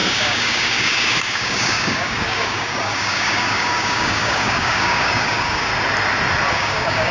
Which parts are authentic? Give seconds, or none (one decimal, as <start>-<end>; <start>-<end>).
5.7-6.5